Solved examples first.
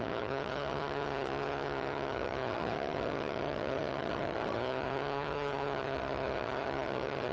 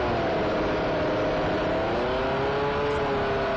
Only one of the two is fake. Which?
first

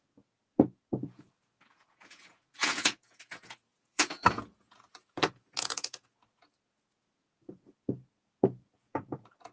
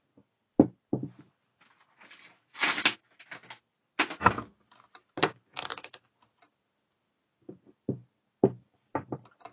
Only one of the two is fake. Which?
first